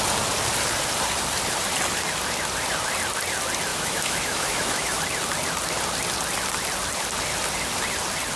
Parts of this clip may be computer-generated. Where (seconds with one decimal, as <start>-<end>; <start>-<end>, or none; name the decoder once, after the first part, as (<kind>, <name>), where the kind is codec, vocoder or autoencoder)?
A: 3.7-5.0 (autoencoder, DAC-VAE)